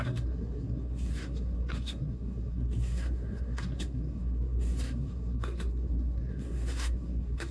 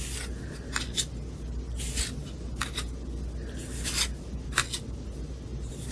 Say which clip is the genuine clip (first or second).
second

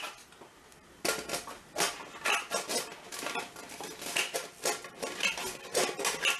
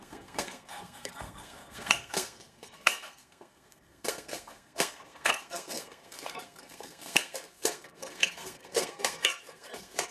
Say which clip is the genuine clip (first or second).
first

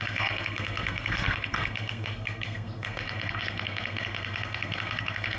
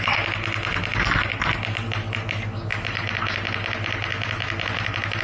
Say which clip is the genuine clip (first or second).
second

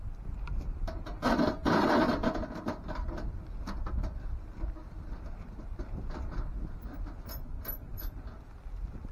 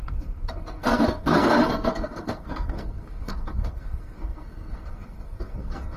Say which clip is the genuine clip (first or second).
first